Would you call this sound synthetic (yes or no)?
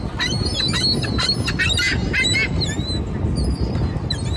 no